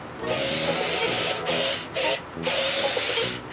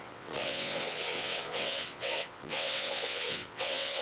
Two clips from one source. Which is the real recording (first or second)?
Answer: first